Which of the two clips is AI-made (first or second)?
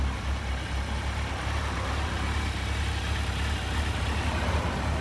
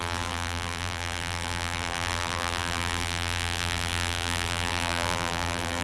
second